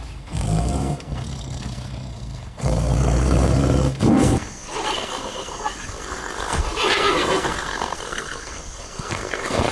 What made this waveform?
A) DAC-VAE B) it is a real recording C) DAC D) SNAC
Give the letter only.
D